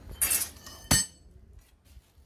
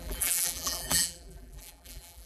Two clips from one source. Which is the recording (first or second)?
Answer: first